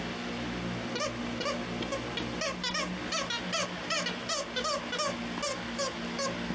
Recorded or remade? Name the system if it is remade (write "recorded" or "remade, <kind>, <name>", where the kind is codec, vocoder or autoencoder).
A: recorded